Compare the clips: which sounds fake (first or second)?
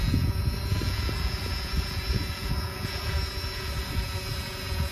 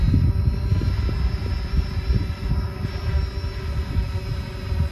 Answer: first